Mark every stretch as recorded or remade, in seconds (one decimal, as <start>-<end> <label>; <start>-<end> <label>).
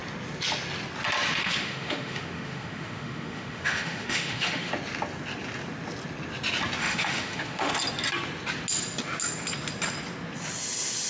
0.0-1.4 recorded; 1.4-4.7 remade; 4.7-6.8 recorded; 6.8-7.7 remade; 7.7-11.1 recorded